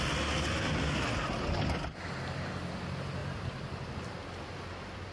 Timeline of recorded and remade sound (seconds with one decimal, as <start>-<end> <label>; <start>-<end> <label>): 0.0-3.2 recorded; 3.2-3.9 remade; 3.9-5.1 recorded